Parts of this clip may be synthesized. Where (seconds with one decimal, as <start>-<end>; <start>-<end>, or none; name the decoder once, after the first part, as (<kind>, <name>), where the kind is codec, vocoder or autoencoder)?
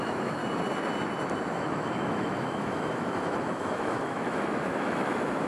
0.0-0.4 (autoencoder, DAC-VAE); 1.5-5.5